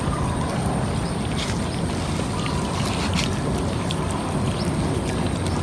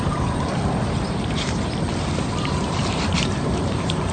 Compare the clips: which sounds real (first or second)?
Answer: first